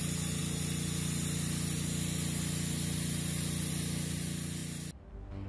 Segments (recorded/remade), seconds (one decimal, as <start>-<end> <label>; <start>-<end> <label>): 0.0-5.5 recorded